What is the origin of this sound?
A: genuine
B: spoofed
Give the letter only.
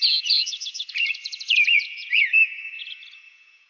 B